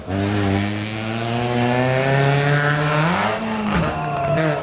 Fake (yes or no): no